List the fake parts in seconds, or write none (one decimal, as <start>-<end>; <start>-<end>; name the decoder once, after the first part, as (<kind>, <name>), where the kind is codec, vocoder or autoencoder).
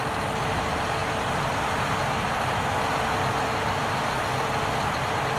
none